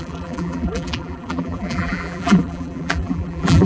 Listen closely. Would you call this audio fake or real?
fake